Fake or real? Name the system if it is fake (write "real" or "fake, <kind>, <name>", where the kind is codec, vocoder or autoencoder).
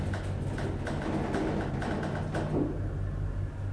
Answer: real